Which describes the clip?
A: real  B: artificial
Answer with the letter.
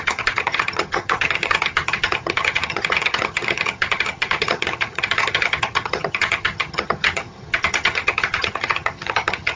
B